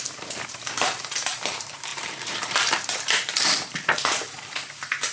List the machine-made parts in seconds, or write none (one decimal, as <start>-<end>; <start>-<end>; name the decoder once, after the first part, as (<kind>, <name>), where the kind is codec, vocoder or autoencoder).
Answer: 0.0-5.1 (vocoder, BigVGAN v2)